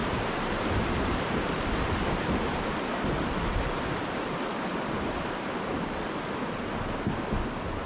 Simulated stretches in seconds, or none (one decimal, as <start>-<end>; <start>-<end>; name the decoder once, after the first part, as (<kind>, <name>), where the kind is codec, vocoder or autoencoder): none